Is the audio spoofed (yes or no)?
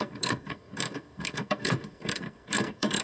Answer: yes